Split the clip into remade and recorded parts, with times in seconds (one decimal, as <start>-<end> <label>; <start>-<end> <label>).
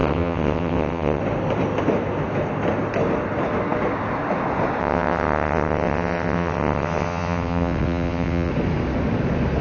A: 0.0-1.2 remade; 1.2-4.8 recorded; 4.8-8.5 remade; 8.5-9.6 recorded